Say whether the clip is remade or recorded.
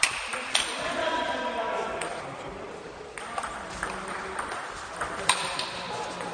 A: recorded